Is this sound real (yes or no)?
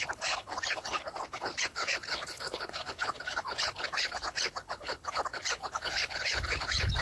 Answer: no